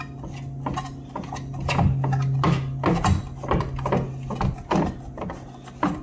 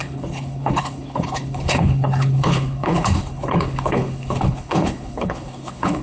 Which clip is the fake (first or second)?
second